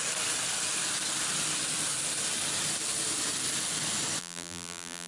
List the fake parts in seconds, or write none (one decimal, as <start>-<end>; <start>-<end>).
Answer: 4.2-5.1